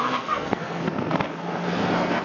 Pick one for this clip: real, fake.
fake